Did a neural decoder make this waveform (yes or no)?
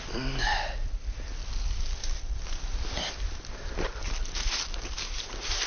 no